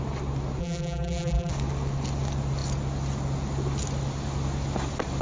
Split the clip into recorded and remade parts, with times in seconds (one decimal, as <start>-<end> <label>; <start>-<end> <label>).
0.0-0.6 recorded; 0.6-1.5 remade; 1.5-5.2 recorded

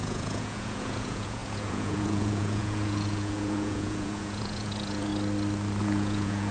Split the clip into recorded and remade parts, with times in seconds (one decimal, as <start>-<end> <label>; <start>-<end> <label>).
0.0-5.1 remade; 5.1-5.8 recorded; 5.8-6.5 remade

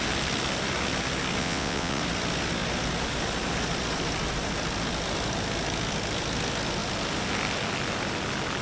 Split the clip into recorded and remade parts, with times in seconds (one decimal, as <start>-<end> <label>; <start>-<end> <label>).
0.0-1.4 recorded; 1.4-2.0 remade; 2.0-8.6 recorded

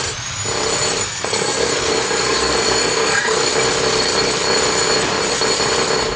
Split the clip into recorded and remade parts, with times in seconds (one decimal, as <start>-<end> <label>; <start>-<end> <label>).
0.0-1.0 recorded; 1.0-3.4 remade; 3.4-6.2 recorded

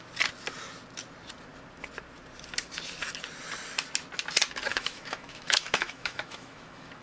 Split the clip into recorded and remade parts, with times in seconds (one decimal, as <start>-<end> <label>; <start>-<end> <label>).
0.0-4.7 recorded; 4.7-7.0 remade

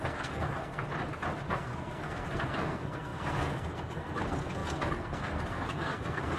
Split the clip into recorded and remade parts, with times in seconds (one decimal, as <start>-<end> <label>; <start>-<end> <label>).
0.0-0.8 remade; 0.8-1.5 recorded; 1.5-6.4 remade

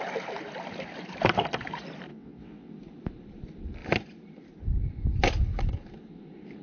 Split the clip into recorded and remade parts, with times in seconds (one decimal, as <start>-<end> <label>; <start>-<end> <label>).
0.0-2.1 recorded; 2.1-2.7 remade; 2.7-6.6 recorded